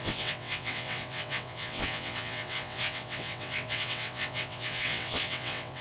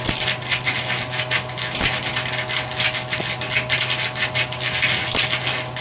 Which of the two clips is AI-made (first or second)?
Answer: first